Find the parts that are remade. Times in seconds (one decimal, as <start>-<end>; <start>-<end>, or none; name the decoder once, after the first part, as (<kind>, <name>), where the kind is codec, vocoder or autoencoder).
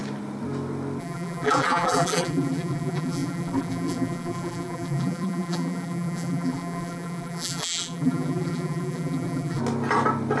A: 1.0-9.6 (vocoder, BigVGAN v2)